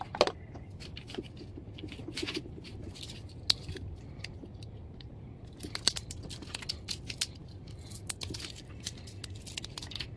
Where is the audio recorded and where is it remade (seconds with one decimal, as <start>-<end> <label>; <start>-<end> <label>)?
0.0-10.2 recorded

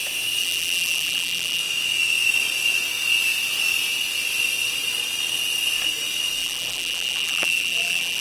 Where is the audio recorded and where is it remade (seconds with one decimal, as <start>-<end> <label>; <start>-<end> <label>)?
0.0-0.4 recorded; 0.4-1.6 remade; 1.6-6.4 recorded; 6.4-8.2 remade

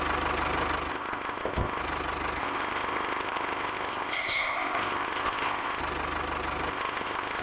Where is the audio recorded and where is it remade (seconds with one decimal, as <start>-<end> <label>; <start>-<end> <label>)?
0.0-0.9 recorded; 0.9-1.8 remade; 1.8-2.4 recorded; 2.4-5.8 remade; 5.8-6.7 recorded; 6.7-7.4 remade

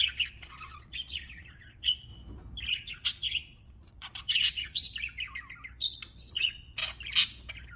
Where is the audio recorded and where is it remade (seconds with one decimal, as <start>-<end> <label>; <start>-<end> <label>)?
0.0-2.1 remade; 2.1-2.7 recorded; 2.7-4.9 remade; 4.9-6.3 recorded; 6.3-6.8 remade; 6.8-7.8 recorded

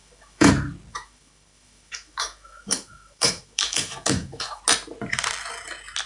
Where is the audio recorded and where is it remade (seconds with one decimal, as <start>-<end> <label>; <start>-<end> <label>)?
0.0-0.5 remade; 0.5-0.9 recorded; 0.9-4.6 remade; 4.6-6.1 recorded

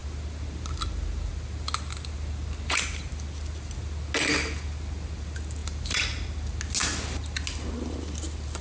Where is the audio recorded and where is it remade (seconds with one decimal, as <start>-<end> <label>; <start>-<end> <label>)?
0.0-8.6 recorded

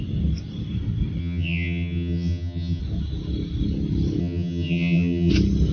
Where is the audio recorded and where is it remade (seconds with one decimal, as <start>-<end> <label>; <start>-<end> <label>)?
0.0-1.2 recorded; 1.2-2.8 remade; 2.8-4.2 recorded; 4.2-5.3 remade; 5.3-5.7 recorded